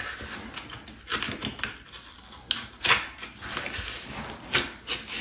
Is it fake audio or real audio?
real